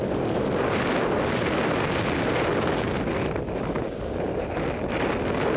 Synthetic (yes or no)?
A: no